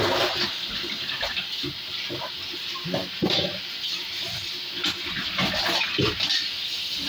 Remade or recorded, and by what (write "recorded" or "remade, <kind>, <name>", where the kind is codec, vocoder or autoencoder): remade, vocoder, BigVGAN v2